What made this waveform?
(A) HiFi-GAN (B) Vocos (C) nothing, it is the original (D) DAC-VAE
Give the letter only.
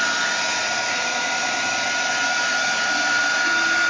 C